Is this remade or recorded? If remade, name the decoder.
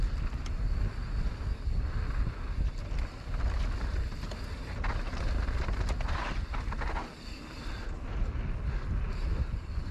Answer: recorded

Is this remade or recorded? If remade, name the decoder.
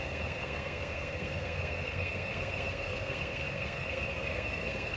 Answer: remade, codec, SNAC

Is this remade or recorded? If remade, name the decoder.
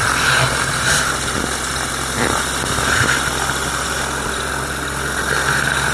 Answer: recorded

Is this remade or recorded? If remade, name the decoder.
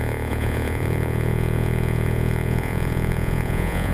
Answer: remade, vocoder, Vocos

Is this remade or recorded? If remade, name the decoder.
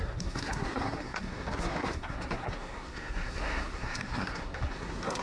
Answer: remade, codec, SNAC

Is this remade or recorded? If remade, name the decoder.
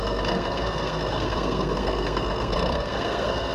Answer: remade, codec, SNAC